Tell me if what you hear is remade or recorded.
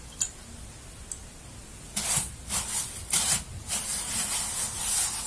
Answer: recorded